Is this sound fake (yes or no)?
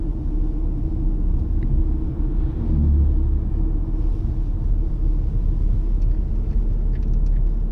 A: no